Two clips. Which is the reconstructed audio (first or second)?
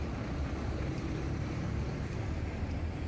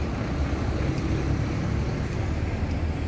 first